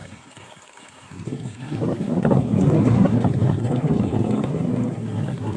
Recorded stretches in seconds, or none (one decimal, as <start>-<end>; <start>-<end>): none